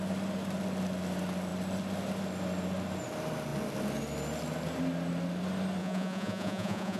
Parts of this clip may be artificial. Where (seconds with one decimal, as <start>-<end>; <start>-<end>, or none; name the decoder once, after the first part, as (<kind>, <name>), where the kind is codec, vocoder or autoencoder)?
5.8-7.0 (vocoder, Vocos)